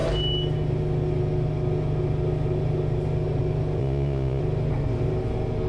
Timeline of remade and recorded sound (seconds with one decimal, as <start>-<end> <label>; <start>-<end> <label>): 0.0-3.8 recorded; 3.8-4.4 remade; 4.4-5.7 recorded